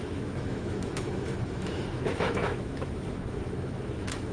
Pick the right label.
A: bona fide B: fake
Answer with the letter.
B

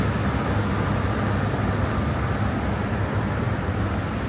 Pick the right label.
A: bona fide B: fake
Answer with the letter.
A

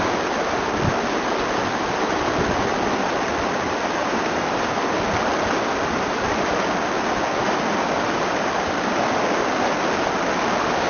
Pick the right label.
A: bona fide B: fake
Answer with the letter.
A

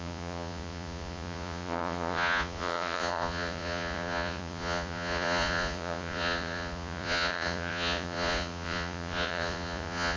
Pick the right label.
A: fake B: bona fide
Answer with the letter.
A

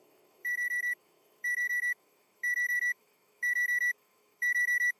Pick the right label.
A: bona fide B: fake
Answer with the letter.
B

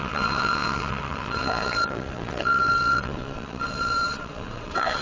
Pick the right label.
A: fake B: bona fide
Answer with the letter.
A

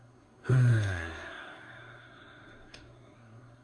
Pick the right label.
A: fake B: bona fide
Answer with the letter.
A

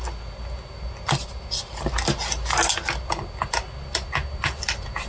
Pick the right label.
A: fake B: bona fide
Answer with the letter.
B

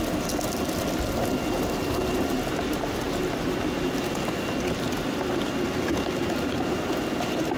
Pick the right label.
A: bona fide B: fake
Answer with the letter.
A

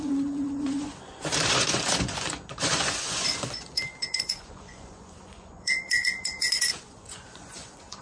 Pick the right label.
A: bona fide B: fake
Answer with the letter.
B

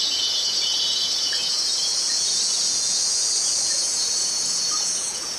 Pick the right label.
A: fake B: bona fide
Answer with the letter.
A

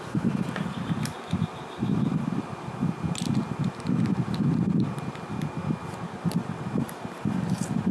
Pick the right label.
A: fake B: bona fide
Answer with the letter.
B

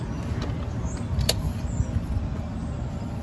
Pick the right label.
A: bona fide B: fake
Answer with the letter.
A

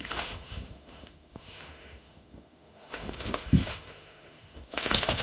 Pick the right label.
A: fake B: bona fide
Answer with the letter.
A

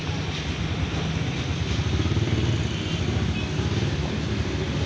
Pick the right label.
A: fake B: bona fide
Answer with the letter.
B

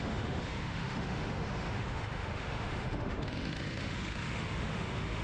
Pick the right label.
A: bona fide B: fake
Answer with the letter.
B